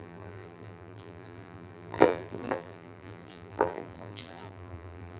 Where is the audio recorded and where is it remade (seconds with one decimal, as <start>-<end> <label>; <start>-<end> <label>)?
0.0-5.2 remade